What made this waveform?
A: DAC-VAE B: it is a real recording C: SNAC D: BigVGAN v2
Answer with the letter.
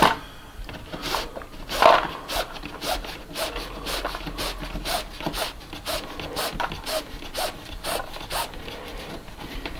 B